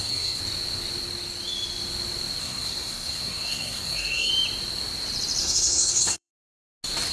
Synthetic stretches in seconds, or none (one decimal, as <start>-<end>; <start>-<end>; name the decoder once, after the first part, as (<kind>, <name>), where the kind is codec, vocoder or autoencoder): 0.0-0.4 (codec, SNAC); 2.4-4.3; 5.4-6.3